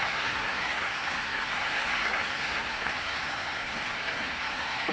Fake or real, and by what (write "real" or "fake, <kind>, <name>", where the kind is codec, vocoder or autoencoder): fake, codec, SNAC